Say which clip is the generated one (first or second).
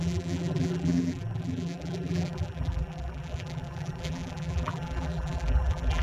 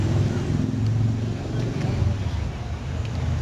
first